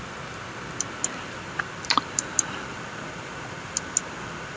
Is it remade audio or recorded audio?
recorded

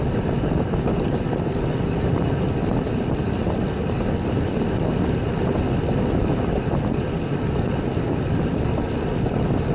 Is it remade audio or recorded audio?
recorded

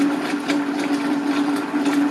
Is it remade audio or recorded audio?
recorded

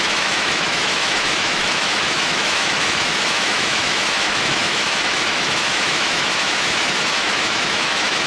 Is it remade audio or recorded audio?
remade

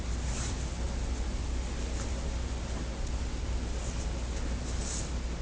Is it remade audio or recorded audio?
recorded